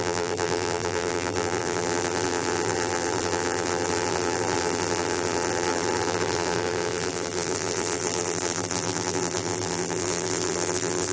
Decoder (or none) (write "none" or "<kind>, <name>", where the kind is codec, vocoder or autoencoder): vocoder, BigVGAN v2